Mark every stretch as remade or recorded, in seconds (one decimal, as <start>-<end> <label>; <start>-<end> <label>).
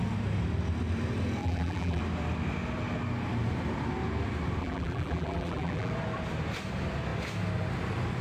0.0-1.4 recorded; 1.4-2.0 remade; 2.0-4.6 recorded; 4.6-5.9 remade; 5.9-8.2 recorded